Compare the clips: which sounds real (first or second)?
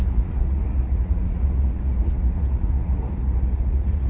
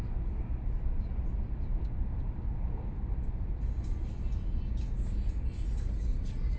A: second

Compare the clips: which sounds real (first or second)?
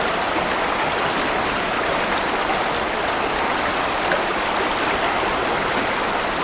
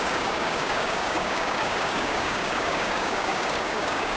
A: first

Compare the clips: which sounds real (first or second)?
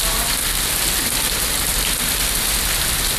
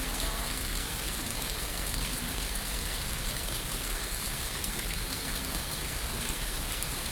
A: first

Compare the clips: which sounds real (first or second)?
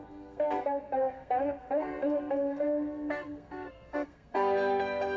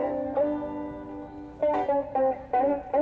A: second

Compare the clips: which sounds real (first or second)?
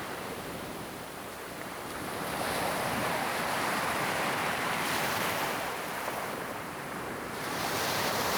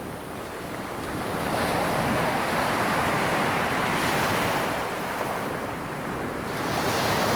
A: second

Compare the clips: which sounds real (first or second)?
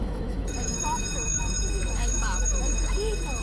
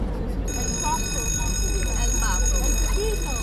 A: second